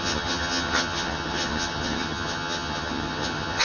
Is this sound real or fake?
fake